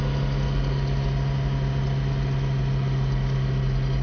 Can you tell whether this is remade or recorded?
recorded